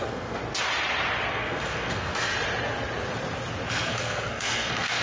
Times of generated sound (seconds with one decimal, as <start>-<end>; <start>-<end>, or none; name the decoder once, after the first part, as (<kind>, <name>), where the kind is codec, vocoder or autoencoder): 0.0-0.4 (codec, SNAC); 1.3-2.3; 3.7-5.0

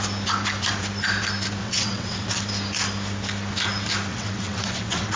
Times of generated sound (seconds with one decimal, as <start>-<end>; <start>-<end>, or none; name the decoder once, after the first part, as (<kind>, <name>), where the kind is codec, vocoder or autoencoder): 1.6-2.4 (vocoder, WaveNeXt); 4.1-5.2

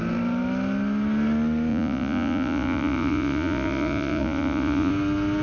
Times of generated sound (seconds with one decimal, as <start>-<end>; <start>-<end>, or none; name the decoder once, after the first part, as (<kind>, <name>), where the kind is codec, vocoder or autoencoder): 1.7-4.9 (vocoder, Vocos)

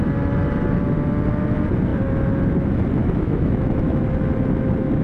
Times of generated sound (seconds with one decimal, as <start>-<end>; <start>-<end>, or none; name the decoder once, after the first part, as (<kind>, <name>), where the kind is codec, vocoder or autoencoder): 3.0-4.0 (autoencoder, DAC-VAE)

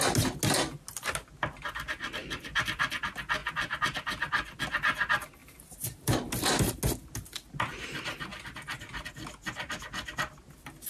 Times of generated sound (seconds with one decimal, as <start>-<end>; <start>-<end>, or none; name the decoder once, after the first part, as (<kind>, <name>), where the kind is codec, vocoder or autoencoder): 2.2-3.0 (vocoder, BigVGAN v2); 3.4-4.6; 5.4-6.3; 8.3-9.1

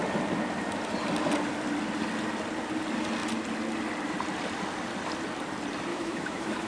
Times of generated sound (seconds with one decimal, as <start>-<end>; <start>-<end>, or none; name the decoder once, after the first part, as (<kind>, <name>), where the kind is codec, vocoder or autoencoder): 5.9-6.7 (autoencoder, DAC-VAE)

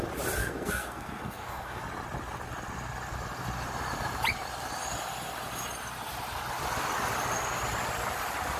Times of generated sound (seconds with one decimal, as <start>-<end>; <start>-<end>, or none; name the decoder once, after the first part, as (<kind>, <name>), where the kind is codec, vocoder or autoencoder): 0.4-1.8 (codec, SNAC)